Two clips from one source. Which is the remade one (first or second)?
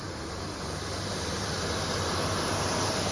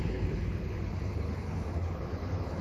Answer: second